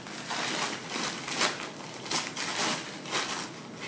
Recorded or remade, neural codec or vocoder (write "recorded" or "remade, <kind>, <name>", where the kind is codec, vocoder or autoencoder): recorded